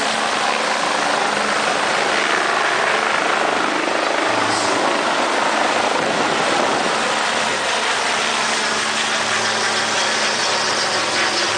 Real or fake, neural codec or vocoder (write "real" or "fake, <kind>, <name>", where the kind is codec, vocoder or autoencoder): real